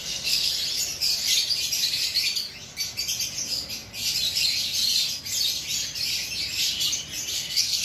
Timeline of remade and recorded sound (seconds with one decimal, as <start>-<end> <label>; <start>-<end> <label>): 0.0-0.5 remade; 0.5-7.3 recorded; 7.3-7.8 remade